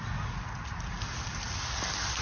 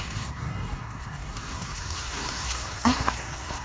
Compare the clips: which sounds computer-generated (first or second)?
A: second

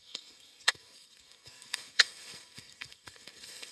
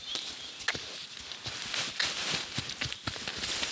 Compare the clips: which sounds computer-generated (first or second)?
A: first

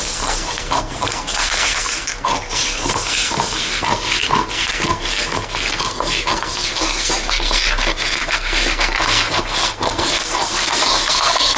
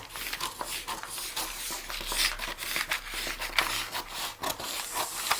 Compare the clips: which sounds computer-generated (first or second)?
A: first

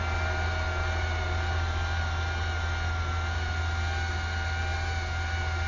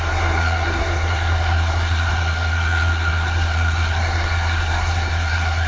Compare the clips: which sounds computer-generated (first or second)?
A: second